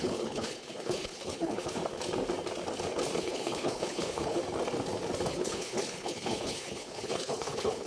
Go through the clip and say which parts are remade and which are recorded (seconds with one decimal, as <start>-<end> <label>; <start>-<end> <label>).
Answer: 0.0-1.8 remade; 1.8-3.2 recorded; 3.2-4.4 remade; 4.4-5.3 recorded; 5.3-7.9 remade